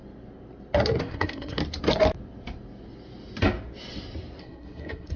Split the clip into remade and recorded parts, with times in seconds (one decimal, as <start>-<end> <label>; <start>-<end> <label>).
0.0-1.0 recorded; 1.0-1.6 remade; 1.6-4.4 recorded; 4.4-5.2 remade